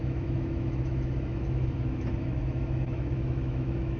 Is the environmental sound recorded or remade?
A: remade